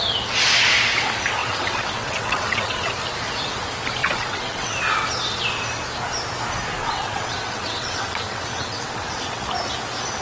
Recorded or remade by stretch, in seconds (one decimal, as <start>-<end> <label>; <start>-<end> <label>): 0.0-1.4 recorded; 1.4-2.9 remade; 2.9-4.0 recorded; 4.0-4.8 remade; 4.8-6.8 recorded; 6.8-9.5 remade; 9.5-10.2 recorded